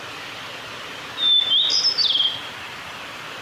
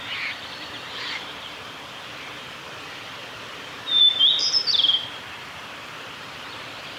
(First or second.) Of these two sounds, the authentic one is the first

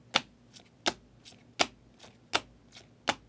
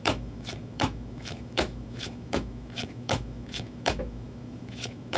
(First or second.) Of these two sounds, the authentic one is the first